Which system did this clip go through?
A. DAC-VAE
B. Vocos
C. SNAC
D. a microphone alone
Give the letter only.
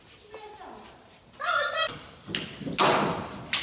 D